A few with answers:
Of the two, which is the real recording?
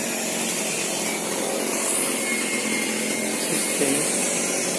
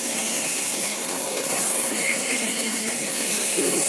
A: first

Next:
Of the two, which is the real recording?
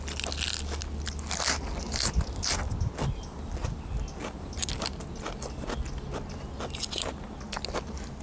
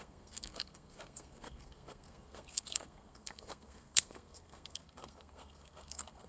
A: first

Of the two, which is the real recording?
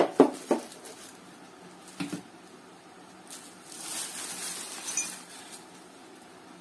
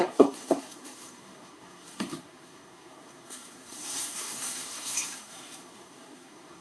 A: first